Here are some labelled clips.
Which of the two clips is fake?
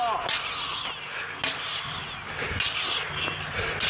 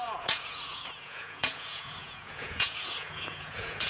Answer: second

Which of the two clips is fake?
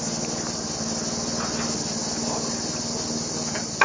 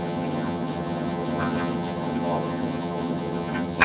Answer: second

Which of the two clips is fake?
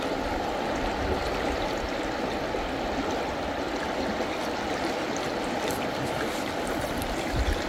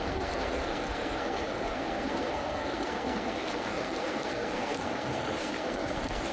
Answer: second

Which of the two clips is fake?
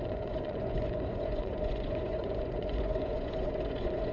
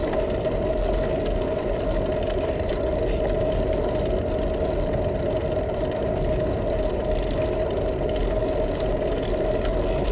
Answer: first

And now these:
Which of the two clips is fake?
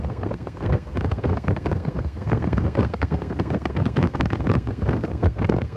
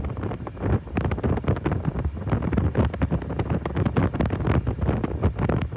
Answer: first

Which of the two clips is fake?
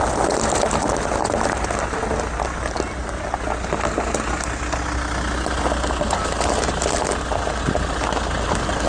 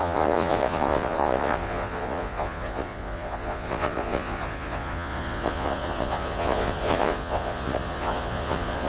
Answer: second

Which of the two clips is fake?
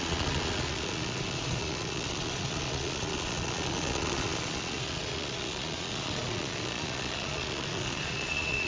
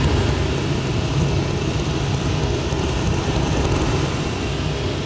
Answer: first